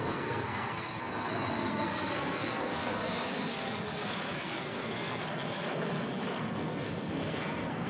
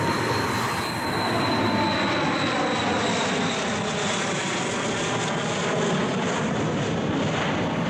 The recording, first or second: second